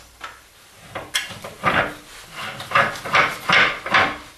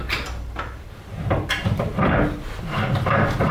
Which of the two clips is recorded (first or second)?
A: first